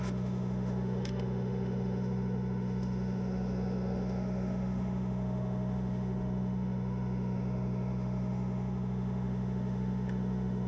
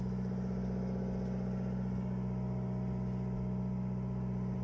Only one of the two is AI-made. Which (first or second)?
first